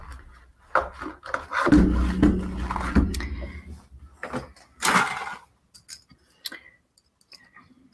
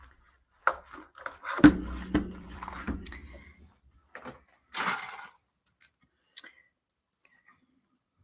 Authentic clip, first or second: first